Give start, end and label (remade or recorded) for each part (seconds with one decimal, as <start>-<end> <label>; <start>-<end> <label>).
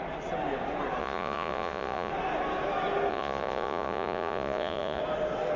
0.0-1.0 recorded; 1.0-2.1 remade; 2.1-3.1 recorded; 3.1-5.0 remade; 5.0-5.6 recorded